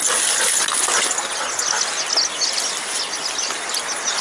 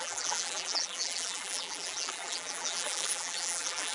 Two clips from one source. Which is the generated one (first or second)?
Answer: second